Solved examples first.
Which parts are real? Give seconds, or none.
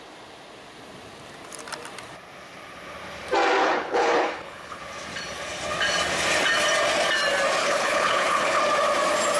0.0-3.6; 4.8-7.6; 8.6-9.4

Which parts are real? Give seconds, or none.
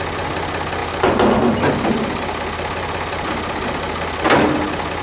0.0-5.0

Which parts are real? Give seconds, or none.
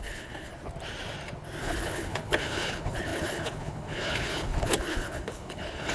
0.5-1.6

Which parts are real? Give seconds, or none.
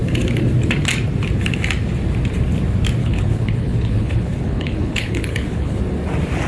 0.0-3.0; 5.8-6.5